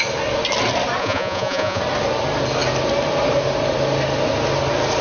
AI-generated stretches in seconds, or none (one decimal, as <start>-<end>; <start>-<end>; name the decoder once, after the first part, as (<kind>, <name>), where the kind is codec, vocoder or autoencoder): 1.0-1.8 (vocoder, Vocos)

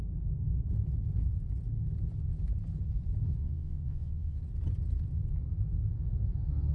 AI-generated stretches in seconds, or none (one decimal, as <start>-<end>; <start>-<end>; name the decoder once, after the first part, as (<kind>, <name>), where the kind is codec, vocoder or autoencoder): 3.4-4.4 (vocoder, Vocos)

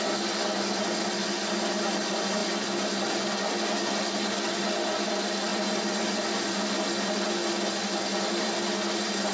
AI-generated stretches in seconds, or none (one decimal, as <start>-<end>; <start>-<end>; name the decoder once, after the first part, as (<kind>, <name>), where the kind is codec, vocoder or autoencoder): none

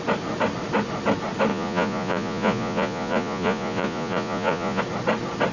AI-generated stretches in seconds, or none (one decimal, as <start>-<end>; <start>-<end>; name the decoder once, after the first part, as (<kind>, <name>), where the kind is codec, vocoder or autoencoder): 1.5-4.8 (vocoder, Vocos)

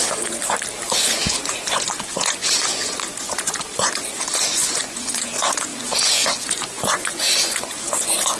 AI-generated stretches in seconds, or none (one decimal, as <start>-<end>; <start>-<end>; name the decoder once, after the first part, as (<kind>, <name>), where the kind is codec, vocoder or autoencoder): 0.0-0.4 (vocoder, Vocos); 1.0-8.4

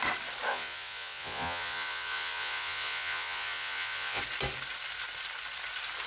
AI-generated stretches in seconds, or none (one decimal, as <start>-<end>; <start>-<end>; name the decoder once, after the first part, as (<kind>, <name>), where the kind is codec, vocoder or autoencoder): 0.5-4.2 (vocoder, Vocos)